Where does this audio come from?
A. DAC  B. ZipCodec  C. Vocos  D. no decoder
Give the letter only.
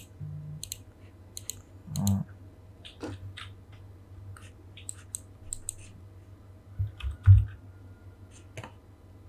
D